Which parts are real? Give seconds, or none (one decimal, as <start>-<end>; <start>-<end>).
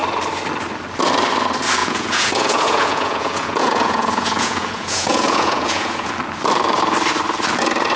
0.0-1.8; 6.1-8.0